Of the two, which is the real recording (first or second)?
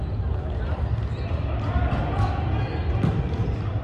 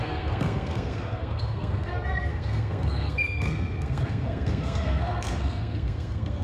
first